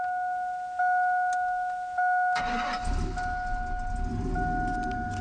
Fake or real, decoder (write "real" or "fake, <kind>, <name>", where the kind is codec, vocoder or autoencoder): real